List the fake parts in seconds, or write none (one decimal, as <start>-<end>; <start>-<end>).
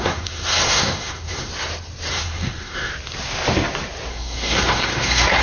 0.0-1.5; 2.1-2.9; 4.1-5.4